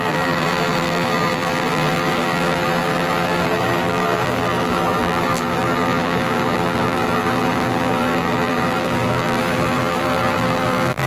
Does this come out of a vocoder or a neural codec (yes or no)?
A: yes